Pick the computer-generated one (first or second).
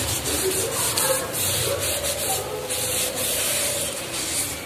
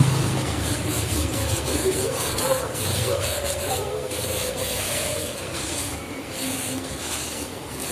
second